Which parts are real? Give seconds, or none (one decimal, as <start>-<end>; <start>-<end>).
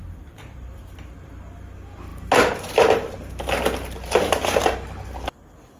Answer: 0.0-5.8